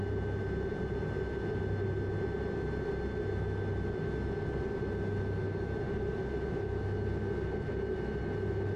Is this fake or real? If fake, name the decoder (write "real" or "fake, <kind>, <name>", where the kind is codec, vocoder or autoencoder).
real